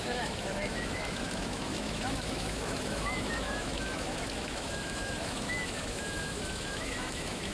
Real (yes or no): no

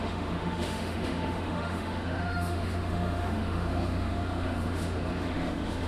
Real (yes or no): no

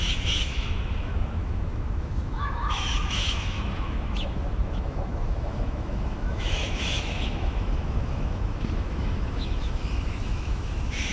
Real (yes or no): no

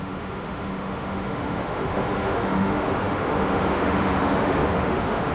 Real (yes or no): no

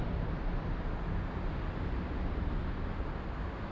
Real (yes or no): yes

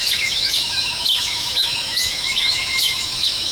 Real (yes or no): no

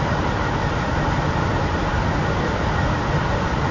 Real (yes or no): yes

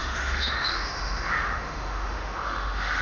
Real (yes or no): no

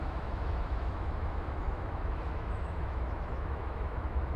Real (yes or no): no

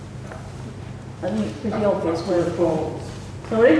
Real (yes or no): yes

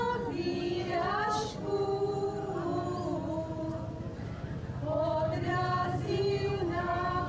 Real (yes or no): yes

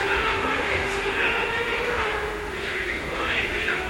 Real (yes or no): no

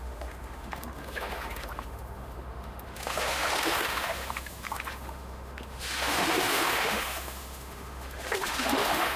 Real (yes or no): no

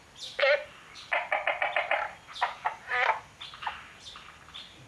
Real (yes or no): yes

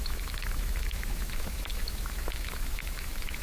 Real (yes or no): no